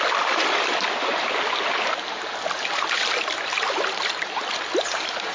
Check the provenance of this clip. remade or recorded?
recorded